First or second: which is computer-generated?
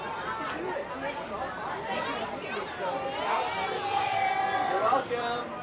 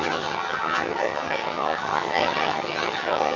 second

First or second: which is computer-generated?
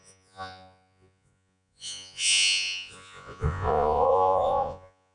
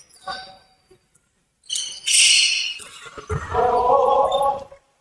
first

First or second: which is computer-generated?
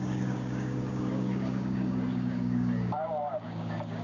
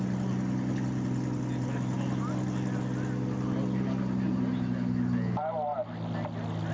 first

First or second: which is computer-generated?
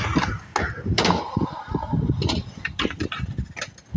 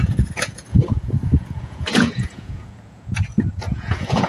second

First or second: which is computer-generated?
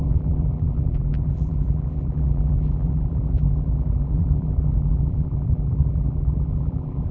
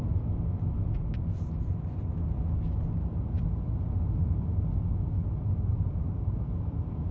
first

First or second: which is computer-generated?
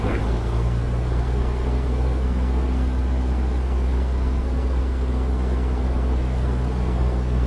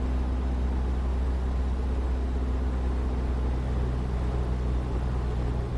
first